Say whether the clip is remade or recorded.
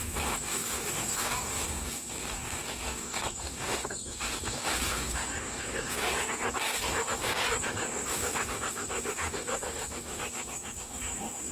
remade